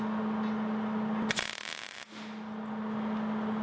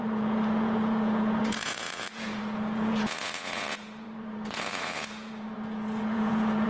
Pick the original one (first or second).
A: first